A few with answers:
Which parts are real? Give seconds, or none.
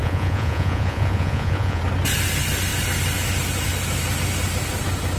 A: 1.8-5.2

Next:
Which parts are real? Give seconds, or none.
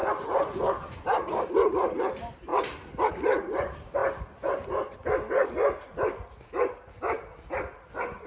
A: 2.5-3.1; 4.0-8.3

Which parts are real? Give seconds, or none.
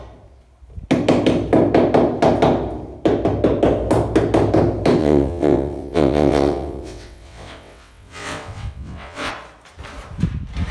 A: 0.0-5.0; 9.3-10.7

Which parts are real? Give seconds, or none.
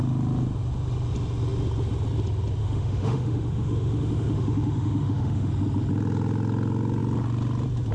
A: 0.0-2.6; 5.5-7.9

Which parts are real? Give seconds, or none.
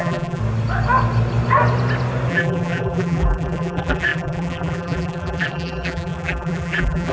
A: 0.4-2.3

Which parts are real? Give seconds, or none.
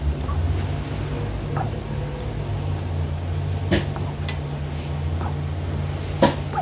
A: 0.0-6.6